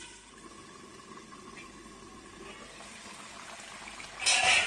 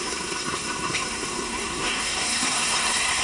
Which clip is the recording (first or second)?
first